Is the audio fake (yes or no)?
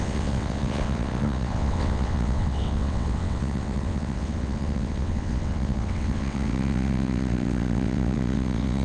yes